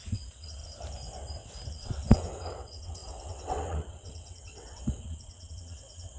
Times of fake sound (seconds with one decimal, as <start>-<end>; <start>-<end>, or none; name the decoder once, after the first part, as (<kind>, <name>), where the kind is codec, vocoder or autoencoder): 0.0-0.6 (vocoder, WaveNeXt); 1.7-6.2